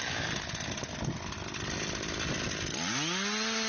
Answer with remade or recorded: recorded